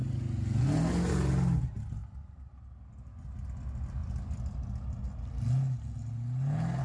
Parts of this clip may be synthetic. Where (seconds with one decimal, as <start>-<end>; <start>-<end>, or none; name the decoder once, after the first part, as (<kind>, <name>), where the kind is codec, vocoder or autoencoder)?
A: none